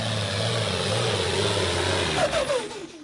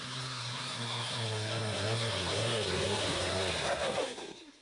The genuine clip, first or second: first